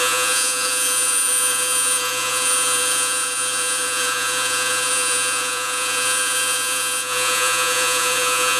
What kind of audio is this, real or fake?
fake